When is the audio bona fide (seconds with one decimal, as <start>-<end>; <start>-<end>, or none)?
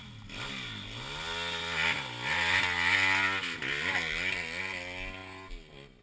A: 0.0-6.0